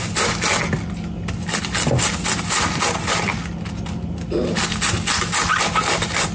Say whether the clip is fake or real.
real